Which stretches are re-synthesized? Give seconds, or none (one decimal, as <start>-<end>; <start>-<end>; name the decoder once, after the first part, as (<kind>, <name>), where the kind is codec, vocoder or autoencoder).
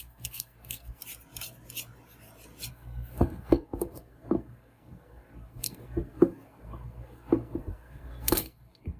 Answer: 0.0-1.0 (codec, SNAC); 2.7-9.0